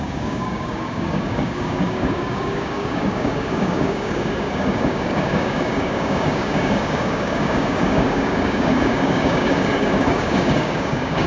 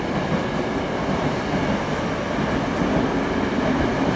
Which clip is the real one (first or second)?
second